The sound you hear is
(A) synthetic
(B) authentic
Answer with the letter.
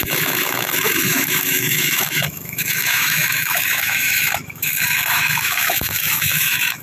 A